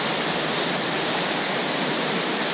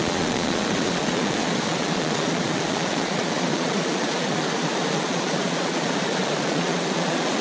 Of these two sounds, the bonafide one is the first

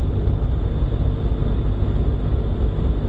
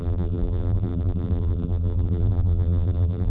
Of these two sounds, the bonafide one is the first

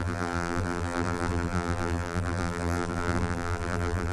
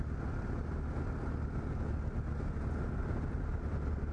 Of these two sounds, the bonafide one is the second